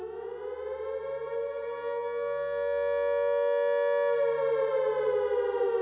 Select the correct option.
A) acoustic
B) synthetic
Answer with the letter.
A